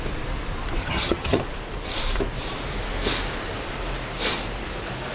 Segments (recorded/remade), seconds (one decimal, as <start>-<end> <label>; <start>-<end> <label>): 0.0-0.8 recorded; 0.8-1.4 remade; 1.4-5.1 recorded